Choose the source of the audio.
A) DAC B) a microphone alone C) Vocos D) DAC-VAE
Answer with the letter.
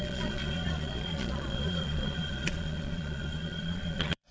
C